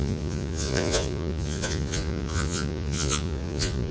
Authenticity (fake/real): fake